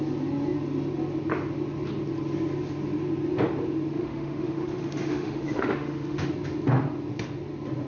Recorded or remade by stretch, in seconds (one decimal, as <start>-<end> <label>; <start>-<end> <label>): 0.0-3.9 recorded; 3.9-6.3 remade; 6.3-7.9 recorded